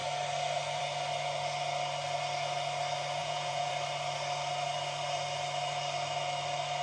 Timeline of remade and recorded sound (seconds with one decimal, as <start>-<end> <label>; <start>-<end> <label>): 0.0-3.2 recorded; 3.2-3.7 remade; 3.7-6.8 recorded